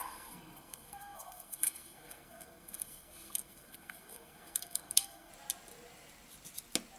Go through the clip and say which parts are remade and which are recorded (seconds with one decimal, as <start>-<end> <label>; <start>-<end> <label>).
0.0-5.3 remade; 5.3-7.0 recorded